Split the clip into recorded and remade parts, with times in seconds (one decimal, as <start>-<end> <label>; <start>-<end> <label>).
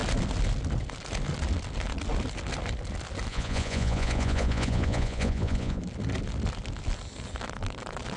0.0-3.3 recorded; 3.3-5.8 remade; 5.8-8.2 recorded